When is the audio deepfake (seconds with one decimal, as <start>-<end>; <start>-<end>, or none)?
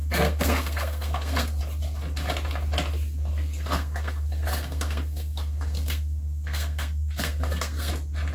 0.0-1.6; 3.3-7.9